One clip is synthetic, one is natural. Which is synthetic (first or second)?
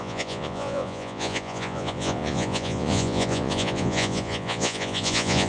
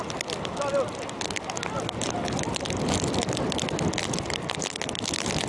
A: first